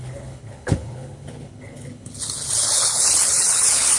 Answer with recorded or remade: remade